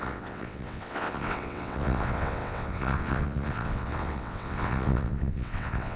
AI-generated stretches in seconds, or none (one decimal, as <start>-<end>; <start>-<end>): 0.0-6.0